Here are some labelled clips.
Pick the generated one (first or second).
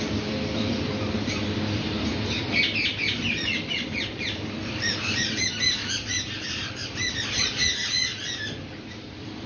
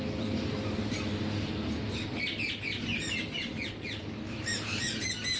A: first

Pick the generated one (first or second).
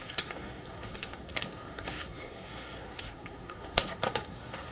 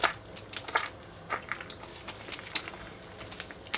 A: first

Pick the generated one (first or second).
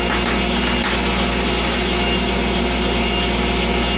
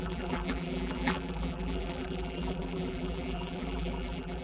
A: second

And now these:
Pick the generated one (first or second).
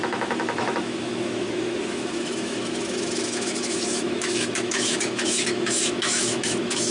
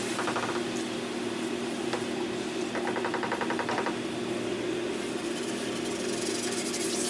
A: first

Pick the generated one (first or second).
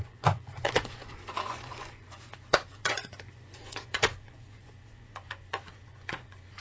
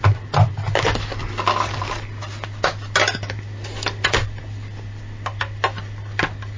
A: first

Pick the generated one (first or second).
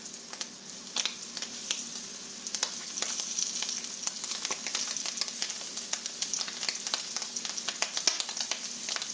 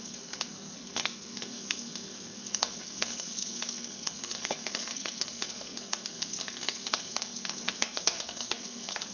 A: second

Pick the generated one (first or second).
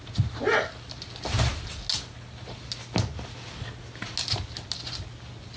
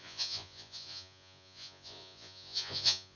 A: second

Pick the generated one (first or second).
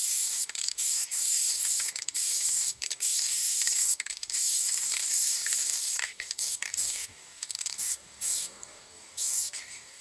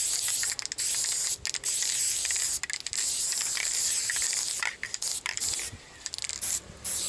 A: first